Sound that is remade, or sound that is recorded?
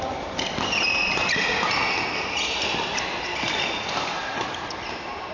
recorded